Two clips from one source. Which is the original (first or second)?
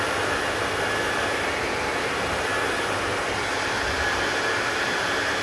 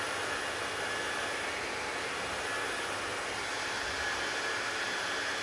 second